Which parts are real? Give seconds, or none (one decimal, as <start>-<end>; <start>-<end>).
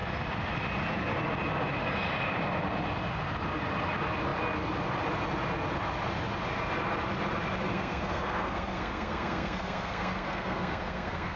0.0-7.7